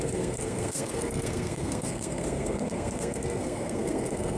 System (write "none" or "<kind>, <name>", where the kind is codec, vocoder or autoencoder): codec, SNAC